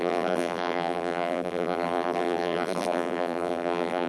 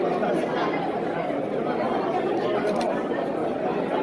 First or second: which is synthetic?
first